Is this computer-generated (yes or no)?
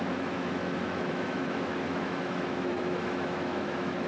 yes